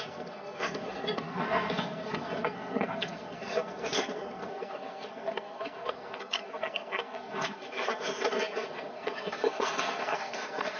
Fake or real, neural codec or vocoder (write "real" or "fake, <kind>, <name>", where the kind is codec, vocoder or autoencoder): fake, codec, SNAC